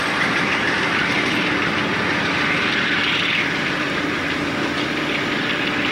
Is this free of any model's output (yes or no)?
no